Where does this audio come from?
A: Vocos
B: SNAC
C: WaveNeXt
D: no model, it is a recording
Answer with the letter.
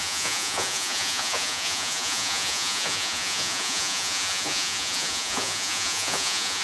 A